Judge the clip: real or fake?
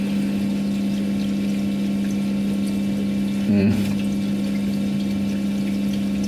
real